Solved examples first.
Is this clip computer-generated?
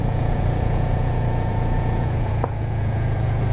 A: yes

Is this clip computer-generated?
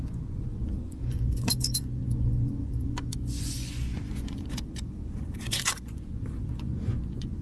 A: yes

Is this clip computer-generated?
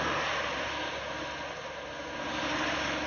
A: no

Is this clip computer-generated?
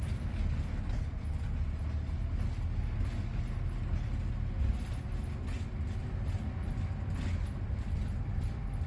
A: no